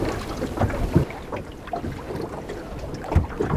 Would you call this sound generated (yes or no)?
no